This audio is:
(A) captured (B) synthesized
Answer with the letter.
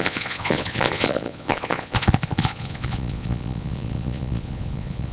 B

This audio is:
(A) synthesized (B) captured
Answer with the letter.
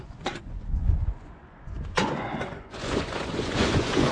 A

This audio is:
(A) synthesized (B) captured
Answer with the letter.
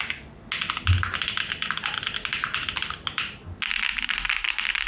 B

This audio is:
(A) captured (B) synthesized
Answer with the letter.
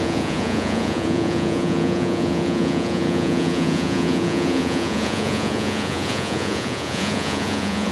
B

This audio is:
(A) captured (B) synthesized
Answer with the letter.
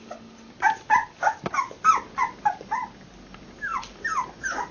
A